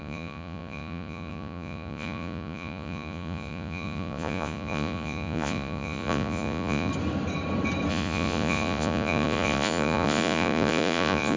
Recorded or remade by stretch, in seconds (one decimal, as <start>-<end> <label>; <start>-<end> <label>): 0.0-6.9 remade; 6.9-7.9 recorded; 7.9-11.4 remade